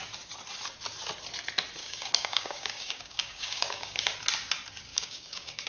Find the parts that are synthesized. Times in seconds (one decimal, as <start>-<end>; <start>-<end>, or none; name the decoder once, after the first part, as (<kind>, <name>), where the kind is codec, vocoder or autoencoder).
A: 1.8-4.1 (codec, DAC); 4.9-5.7